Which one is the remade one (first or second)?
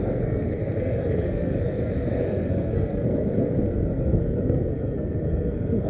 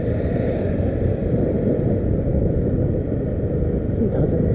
first